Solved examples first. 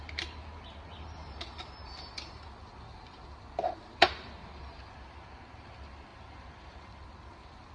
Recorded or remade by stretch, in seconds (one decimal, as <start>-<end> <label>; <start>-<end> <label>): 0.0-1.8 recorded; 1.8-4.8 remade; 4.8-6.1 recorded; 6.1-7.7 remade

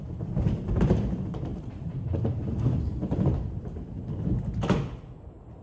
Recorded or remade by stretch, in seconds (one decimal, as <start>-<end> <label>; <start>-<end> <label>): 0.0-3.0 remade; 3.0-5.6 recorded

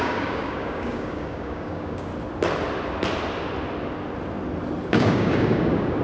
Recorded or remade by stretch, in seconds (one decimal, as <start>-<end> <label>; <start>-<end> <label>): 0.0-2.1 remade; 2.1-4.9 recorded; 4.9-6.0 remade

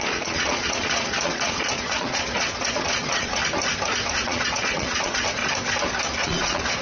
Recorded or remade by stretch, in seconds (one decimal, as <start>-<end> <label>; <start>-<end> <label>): 0.0-3.4 remade; 3.4-4.1 recorded; 4.1-5.4 remade; 5.4-6.2 recorded; 6.2-6.8 remade

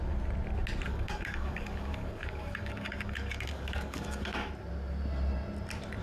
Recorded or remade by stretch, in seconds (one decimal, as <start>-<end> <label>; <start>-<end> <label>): 0.0-0.9 recorded; 0.9-4.5 remade; 4.5-6.0 recorded

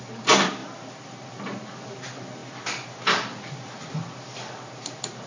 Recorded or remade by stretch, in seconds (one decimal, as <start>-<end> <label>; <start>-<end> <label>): 0.0-0.6 recorded; 0.6-1.4 remade; 1.4-5.3 recorded

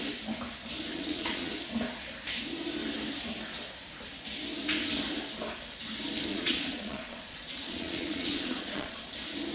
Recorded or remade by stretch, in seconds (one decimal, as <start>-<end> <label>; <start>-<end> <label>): 0.0-0.9 recorded; 0.9-1.5 remade; 1.5-6.3 recorded; 6.3-9.0 remade; 9.0-9.5 recorded